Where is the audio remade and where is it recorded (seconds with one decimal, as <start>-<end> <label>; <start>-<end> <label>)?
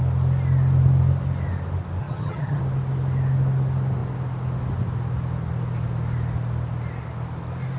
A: 0.0-2.0 recorded; 2.0-2.6 remade; 2.6-7.8 recorded